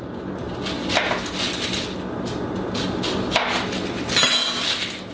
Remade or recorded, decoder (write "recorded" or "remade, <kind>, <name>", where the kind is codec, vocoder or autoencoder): recorded